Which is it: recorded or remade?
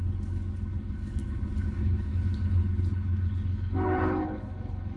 remade